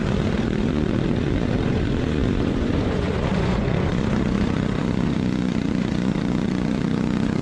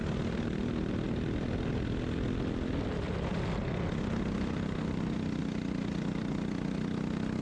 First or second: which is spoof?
first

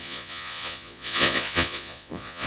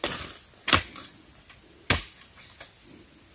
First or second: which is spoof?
first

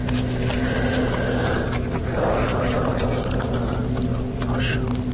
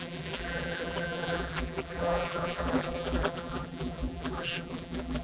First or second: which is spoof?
second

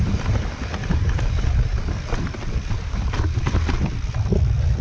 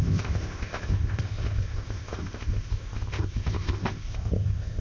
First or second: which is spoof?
second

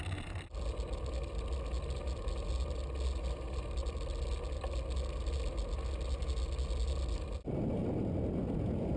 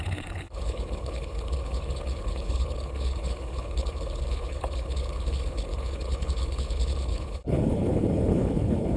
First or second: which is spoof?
second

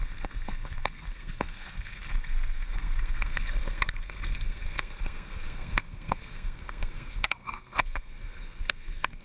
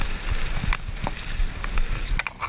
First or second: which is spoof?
first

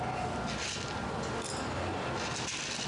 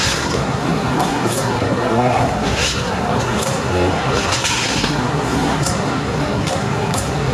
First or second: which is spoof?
second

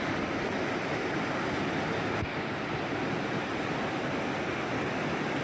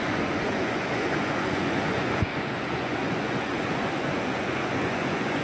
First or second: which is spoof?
second